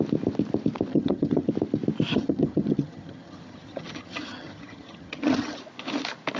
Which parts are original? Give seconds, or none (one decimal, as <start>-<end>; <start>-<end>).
0.0-0.9; 1.5-2.1; 5.6-6.4